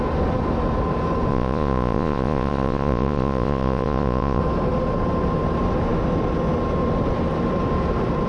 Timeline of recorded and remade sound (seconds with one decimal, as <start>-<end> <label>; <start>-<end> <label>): 0.0-1.3 recorded; 1.3-4.4 remade; 4.4-8.3 recorded